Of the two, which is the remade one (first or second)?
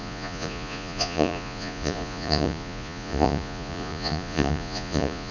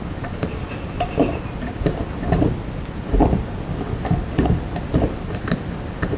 first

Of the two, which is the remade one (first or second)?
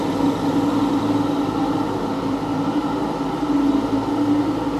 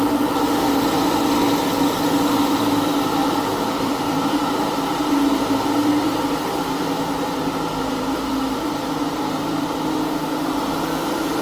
second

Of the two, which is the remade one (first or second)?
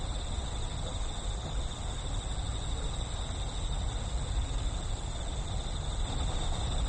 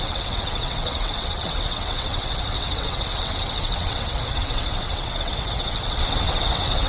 second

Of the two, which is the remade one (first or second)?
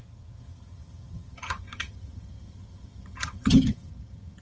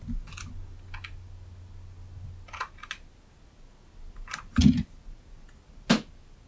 first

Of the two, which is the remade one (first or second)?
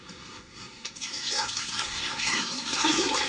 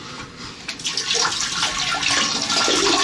first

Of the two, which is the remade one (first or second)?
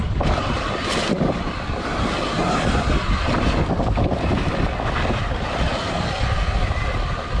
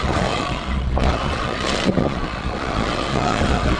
second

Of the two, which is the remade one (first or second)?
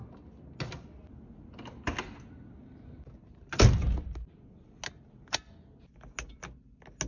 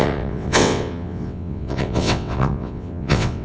second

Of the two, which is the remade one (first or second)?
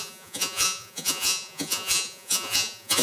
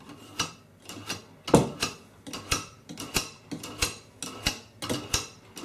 first